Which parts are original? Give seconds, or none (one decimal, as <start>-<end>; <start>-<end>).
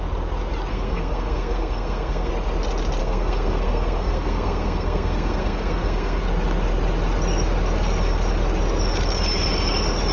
0.0-0.7; 2.3-3.0; 6.2-10.1